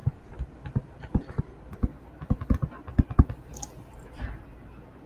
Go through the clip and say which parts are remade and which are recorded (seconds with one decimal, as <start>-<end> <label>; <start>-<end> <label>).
0.0-1.9 remade; 1.9-5.1 recorded